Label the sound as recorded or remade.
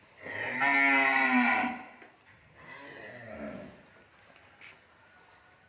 recorded